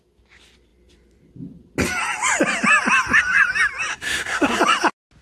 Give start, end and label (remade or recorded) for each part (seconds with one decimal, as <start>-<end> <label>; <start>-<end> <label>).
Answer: 0.0-3.9 recorded; 3.9-4.6 remade; 4.6-5.2 recorded

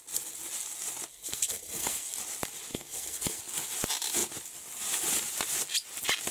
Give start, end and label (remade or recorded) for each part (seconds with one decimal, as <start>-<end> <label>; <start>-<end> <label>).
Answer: 0.0-1.1 recorded; 1.1-2.2 remade; 2.2-2.7 recorded; 2.7-3.4 remade; 3.4-6.3 recorded